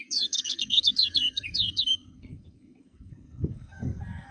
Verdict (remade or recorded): remade